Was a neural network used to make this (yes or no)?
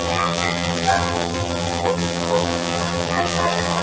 yes